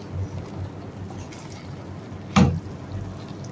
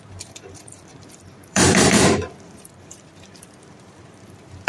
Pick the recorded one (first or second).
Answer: first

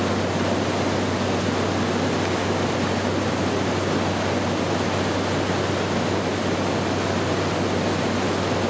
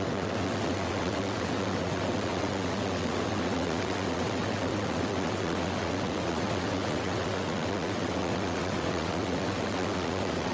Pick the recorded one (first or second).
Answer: first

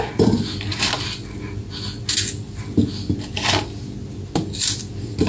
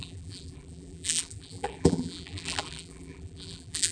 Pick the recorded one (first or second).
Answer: first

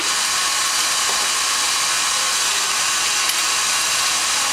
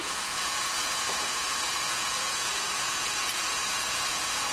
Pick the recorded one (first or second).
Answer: first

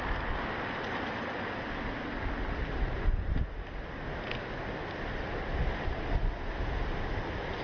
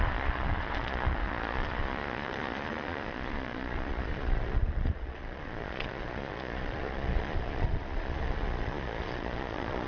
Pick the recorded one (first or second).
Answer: first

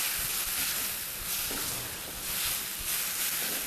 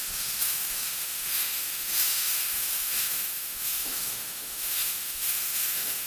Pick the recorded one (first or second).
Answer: first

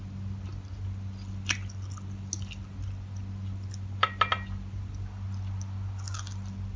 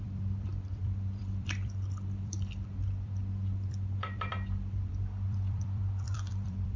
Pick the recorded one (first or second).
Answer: first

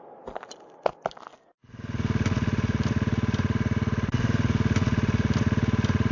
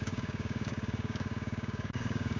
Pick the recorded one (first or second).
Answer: first